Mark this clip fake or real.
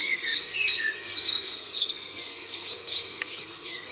fake